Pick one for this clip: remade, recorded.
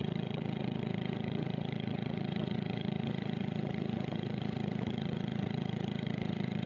remade